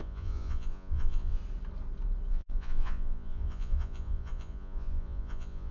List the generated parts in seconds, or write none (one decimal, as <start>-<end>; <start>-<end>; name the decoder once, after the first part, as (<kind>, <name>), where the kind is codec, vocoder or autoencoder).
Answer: 0.0-1.4 (vocoder, Vocos); 2.3-5.7